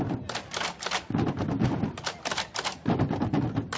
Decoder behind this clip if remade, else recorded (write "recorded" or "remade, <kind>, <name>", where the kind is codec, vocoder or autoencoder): recorded